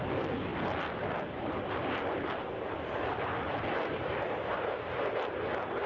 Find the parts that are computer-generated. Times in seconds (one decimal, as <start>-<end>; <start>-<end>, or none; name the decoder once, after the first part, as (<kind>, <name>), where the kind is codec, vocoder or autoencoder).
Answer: none